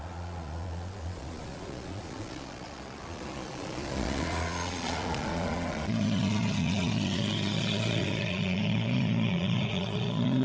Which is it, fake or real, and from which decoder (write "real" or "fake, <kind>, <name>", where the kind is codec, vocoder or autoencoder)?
fake, vocoder, Vocos